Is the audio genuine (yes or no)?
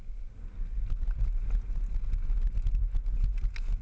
yes